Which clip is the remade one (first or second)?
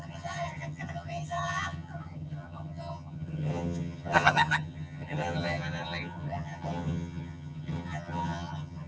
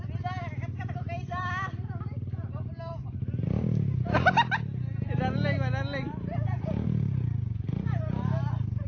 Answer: first